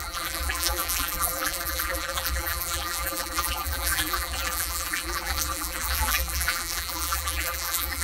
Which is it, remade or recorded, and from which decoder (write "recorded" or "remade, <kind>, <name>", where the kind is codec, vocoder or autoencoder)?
remade, vocoder, BigVGAN v2